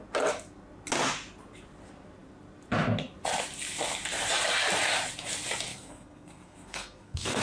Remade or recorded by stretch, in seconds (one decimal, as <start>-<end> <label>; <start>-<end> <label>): 0.0-5.7 recorded; 5.7-7.4 remade